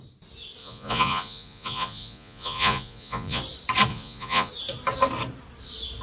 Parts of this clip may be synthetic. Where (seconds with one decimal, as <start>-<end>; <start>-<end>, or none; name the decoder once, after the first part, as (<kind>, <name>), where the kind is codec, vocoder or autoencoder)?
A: 0.6-3.4 (vocoder, Vocos); 3.9-4.5